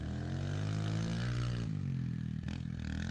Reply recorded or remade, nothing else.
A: recorded